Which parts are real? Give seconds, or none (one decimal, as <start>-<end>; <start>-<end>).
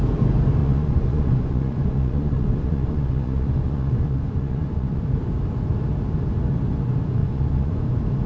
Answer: 0.0-0.6; 5.0-7.2; 7.8-8.3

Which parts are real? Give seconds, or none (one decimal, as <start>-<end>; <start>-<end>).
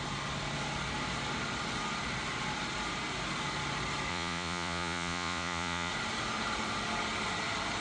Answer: 0.0-4.1; 5.9-7.8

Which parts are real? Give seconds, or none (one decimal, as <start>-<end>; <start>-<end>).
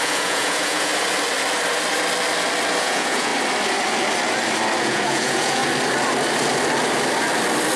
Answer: 0.9-2.8; 3.3-4.8; 5.6-7.8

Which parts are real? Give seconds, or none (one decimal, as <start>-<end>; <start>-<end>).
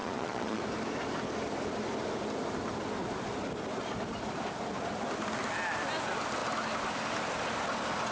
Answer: 0.6-8.1